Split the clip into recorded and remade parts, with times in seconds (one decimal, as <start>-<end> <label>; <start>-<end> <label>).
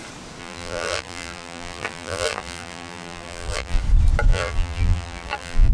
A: 0.0-0.4 recorded; 0.4-3.8 remade; 3.8-4.3 recorded; 4.3-5.7 remade